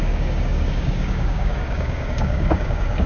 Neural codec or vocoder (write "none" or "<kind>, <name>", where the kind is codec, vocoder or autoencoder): codec, DAC